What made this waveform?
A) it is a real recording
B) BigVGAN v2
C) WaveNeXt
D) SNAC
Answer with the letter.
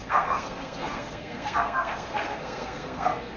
D